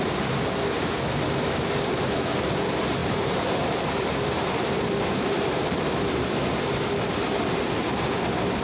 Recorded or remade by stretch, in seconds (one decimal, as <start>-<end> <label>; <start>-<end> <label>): 0.0-3.0 recorded; 3.0-6.6 remade; 6.6-8.6 recorded